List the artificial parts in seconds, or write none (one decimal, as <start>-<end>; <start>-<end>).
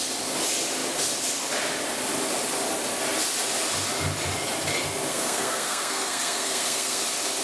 5.1-7.0